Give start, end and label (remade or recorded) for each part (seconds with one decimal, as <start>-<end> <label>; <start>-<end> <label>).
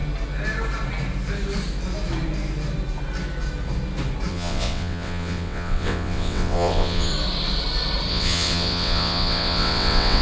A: 0.0-4.3 recorded; 4.3-7.1 remade; 7.1-8.1 recorded; 8.1-10.2 remade